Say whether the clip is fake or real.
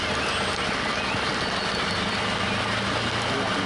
real